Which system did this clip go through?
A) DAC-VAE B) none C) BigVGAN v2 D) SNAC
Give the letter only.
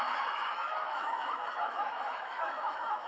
A